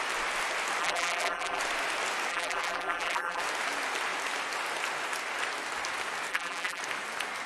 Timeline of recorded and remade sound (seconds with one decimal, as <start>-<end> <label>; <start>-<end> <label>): 0.0-0.8 recorded; 0.8-1.6 remade; 1.6-2.3 recorded; 2.3-3.4 remade; 3.4-6.3 recorded; 6.3-6.8 remade; 6.8-7.5 recorded